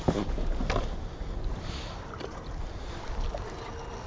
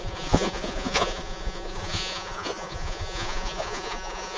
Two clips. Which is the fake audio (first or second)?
second